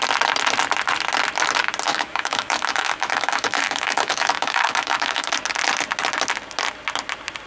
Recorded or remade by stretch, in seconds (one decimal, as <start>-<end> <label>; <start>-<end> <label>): 0.0-1.9 recorded; 1.9-5.3 remade; 5.3-7.5 recorded